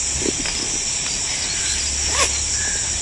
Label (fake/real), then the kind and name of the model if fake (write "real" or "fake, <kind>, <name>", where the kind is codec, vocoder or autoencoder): real